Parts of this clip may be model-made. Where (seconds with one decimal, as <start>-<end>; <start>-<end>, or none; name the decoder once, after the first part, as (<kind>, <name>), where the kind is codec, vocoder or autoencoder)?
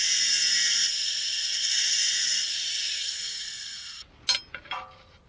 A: 0.9-4.1 (vocoder, Vocos)